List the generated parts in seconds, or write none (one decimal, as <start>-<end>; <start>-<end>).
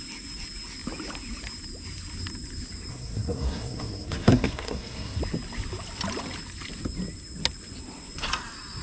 2.9-5.2